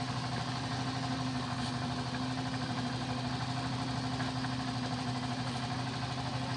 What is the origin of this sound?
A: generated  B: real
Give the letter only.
B